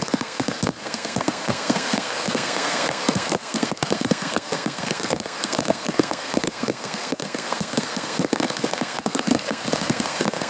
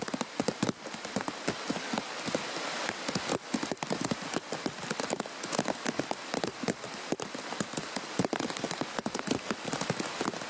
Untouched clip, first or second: second